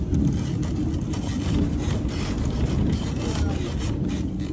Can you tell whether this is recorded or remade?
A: recorded